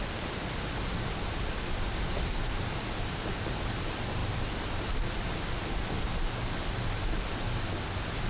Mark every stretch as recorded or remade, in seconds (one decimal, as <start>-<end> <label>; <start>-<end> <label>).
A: 0.0-4.2 remade; 4.2-8.3 recorded